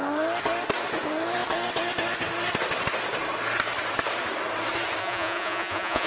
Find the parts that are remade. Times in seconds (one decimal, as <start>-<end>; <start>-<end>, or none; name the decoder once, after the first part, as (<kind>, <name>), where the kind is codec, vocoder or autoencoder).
5.0-6.1 (vocoder, Vocos)